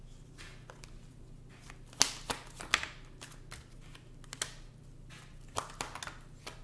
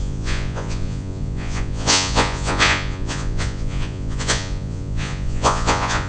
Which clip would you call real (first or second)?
first